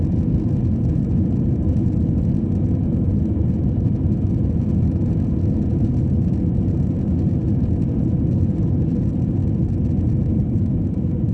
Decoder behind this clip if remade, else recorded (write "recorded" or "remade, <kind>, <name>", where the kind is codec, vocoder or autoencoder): recorded